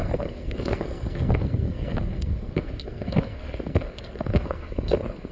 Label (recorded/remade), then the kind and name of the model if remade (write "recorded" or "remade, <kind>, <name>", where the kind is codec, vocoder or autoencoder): remade, codec, SNAC